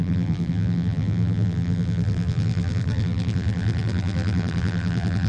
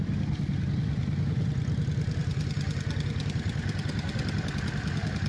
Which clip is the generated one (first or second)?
first